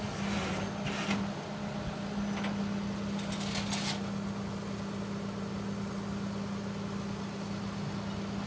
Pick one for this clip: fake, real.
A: real